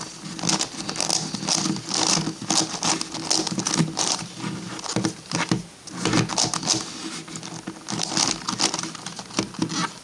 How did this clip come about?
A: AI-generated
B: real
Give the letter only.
B